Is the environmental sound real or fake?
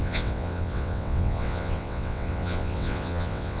fake